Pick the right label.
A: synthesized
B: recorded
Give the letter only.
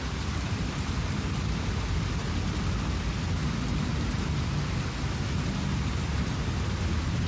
B